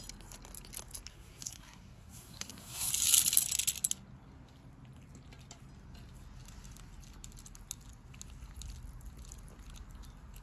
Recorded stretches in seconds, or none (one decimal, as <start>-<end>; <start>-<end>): 0.0-1.1; 2.9-10.4